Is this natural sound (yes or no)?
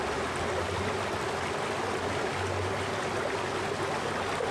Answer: yes